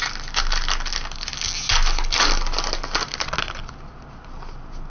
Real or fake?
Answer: real